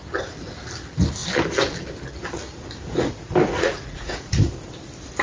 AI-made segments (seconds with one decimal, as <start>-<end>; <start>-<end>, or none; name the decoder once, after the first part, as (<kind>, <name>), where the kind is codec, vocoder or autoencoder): 3.5-4.5 (vocoder, Vocos)